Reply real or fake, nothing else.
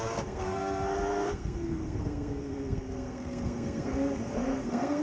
fake